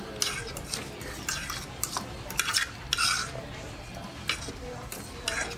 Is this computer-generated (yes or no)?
no